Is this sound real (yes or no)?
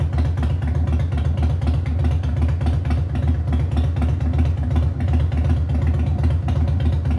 yes